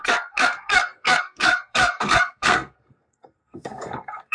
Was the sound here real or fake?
fake